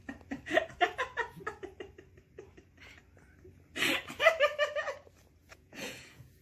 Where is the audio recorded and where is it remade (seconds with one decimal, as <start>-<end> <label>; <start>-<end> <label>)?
0.0-5.4 recorded; 5.4-6.4 remade